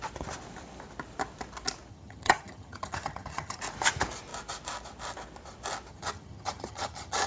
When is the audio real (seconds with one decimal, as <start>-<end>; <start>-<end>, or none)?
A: 0.0-1.9; 3.6-5.9